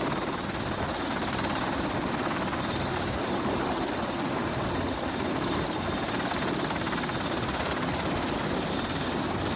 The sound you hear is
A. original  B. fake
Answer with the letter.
A